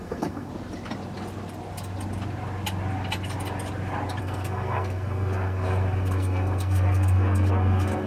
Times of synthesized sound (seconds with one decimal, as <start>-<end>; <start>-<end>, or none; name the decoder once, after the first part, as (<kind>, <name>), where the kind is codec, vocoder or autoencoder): 0.0-0.5 (codec, SNAC); 4.2-8.1